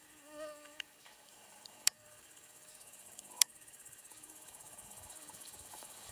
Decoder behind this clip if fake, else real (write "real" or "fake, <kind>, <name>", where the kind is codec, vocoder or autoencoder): fake, codec, DAC